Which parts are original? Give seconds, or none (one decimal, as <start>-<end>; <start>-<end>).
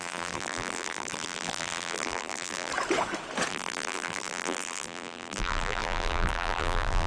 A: 2.7-3.5